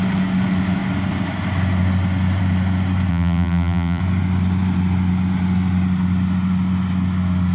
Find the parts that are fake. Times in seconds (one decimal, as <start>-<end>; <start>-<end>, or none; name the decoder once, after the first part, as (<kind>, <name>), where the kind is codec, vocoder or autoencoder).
3.1-4.0 (vocoder, BigVGAN v2)